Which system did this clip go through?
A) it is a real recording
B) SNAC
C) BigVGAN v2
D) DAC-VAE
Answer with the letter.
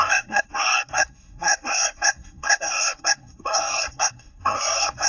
B